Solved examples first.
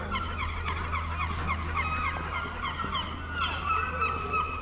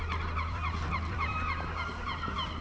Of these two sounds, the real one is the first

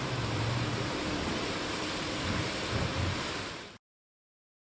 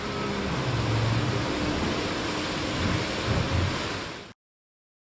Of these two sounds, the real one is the second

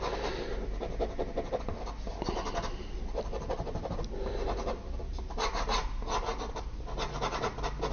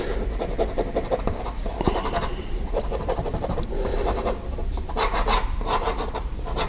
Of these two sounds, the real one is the first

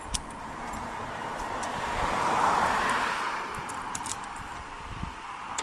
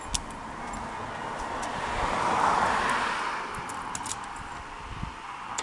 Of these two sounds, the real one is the second